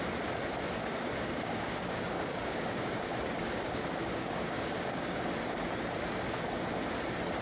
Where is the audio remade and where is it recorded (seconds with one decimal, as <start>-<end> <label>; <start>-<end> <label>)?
0.0-0.8 recorded; 0.8-5.2 remade; 5.2-7.4 recorded